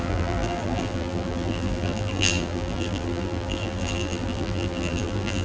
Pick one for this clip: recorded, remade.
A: remade